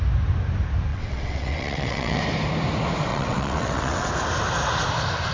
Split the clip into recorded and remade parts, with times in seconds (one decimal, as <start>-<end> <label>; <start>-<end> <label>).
0.0-0.9 recorded; 0.9-2.2 remade; 2.2-3.1 recorded; 3.1-4.1 remade; 4.1-5.3 recorded